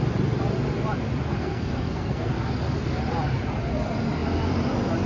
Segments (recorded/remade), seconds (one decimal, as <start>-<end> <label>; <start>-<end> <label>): 0.0-1.3 recorded; 1.3-2.3 remade; 2.3-5.1 recorded